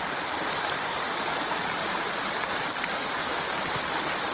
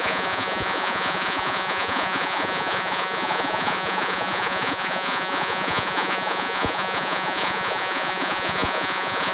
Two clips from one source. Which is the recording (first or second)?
first